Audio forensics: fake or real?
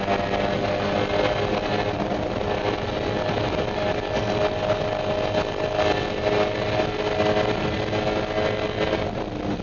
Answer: real